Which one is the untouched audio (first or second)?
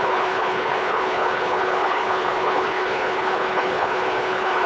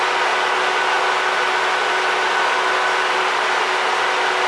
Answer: second